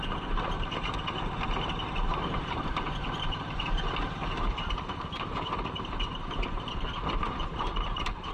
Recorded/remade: remade